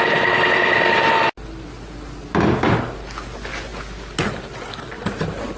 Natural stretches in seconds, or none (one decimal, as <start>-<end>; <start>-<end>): 0.0-5.6